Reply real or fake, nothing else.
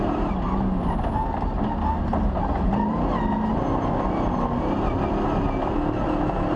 real